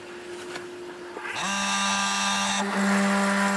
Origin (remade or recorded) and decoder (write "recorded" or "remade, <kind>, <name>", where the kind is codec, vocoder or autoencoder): recorded